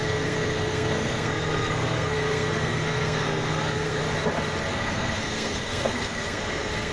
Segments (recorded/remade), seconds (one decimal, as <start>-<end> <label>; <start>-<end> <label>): 0.0-4.0 remade; 4.0-4.7 recorded; 4.7-6.9 remade

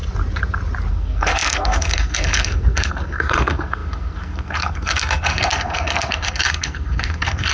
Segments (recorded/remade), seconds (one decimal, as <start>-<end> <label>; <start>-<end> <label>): 0.0-0.9 recorded; 0.9-7.5 remade

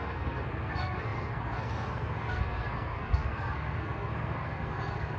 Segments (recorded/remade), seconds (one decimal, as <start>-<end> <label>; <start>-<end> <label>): 0.0-5.2 remade

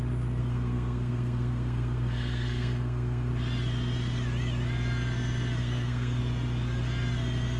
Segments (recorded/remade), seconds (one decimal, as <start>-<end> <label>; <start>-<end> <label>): 0.0-0.4 recorded; 0.4-3.3 remade; 3.3-5.6 recorded; 5.6-6.2 remade; 6.2-7.6 recorded

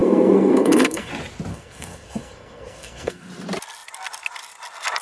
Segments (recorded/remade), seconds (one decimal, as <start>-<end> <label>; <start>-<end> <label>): 0.0-1.1 remade; 1.1-1.5 recorded; 1.5-3.3 remade; 3.3-5.0 recorded